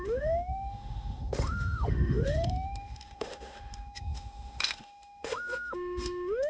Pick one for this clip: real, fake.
fake